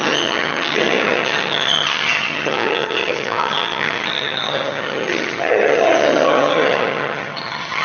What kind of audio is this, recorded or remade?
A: remade